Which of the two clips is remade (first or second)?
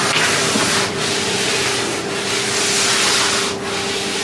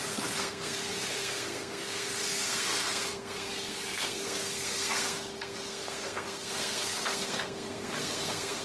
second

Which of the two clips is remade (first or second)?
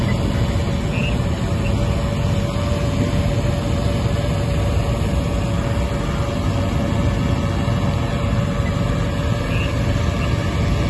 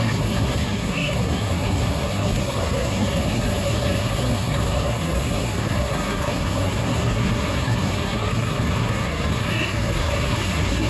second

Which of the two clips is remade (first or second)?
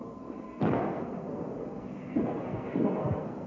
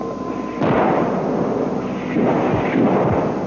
first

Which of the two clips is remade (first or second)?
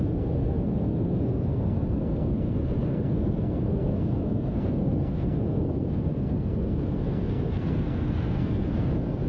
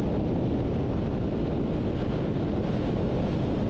first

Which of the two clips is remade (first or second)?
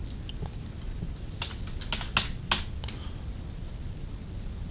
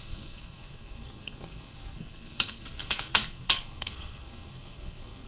second